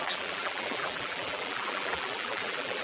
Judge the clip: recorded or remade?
remade